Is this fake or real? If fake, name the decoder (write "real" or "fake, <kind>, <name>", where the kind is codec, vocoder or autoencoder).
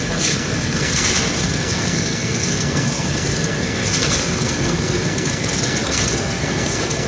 fake, codec, SNAC